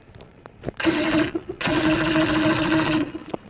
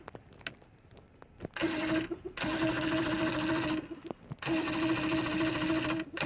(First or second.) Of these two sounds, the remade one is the first